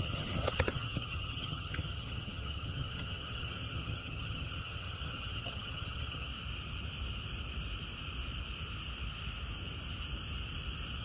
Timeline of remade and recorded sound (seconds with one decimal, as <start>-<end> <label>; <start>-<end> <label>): 0.0-6.3 remade; 6.3-11.0 recorded